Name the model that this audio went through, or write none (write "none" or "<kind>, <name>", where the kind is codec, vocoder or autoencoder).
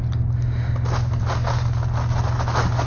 none